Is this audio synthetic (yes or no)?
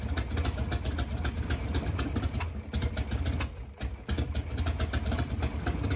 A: no